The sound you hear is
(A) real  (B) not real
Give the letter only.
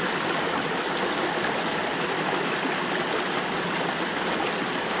A